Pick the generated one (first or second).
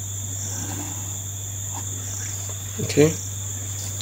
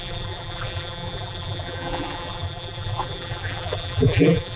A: second